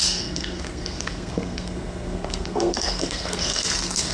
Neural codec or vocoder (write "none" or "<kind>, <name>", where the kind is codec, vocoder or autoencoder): codec, SNAC